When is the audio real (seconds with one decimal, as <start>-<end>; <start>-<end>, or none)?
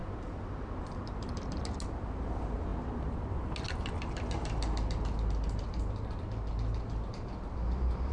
0.0-8.1